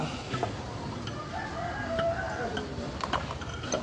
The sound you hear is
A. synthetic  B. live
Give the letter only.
A